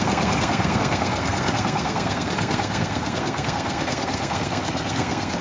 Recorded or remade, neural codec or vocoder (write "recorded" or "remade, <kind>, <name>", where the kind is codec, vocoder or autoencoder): remade, codec, SNAC